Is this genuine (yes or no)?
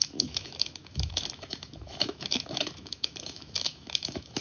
no